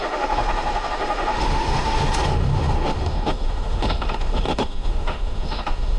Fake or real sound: fake